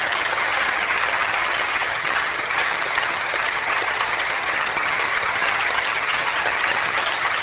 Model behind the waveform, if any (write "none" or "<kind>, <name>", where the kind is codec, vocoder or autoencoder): vocoder, HiFi-GAN